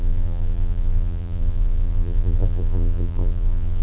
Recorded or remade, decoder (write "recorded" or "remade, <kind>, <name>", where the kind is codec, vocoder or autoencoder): remade, vocoder, BigVGAN v2